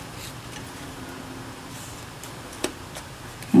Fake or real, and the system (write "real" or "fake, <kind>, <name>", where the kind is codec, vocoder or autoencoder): real